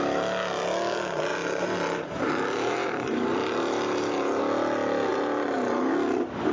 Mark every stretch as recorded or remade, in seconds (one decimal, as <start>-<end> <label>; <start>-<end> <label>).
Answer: 0.0-1.3 recorded; 1.3-4.4 remade; 4.4-5.1 recorded; 5.1-5.9 remade; 5.9-6.5 recorded